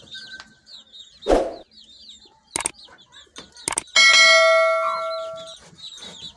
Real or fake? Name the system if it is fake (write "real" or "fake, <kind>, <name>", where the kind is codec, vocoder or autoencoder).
real